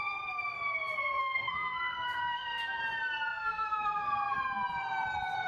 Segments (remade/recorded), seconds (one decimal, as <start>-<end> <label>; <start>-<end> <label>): 0.0-1.0 recorded; 1.0-2.8 remade; 2.8-3.3 recorded; 3.3-4.4 remade; 4.4-5.5 recorded

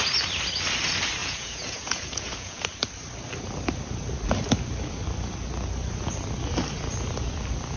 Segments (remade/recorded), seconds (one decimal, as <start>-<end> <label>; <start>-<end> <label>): 0.0-1.2 recorded; 1.2-2.6 remade; 2.6-7.8 recorded

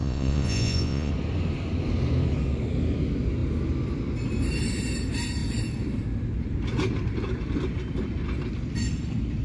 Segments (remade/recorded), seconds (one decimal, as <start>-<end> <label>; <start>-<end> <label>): 0.0-1.1 remade; 1.1-9.4 recorded

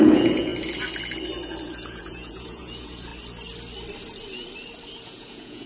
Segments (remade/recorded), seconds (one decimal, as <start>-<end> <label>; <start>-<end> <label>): 0.0-0.5 remade; 0.5-1.7 recorded; 1.7-3.1 remade; 3.1-5.0 recorded; 5.0-5.7 remade

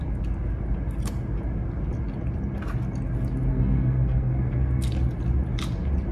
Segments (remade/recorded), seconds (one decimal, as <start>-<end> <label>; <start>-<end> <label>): 0.0-3.5 recorded; 3.5-4.9 remade; 4.9-6.1 recorded

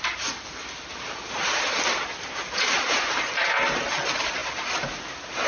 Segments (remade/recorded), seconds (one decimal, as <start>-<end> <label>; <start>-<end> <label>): 0.0-5.5 recorded

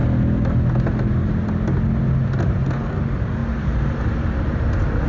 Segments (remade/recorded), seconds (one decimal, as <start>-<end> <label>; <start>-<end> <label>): 0.0-5.1 recorded

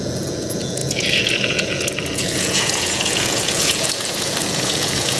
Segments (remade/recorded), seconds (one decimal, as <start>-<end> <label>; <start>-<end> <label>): 0.0-5.2 remade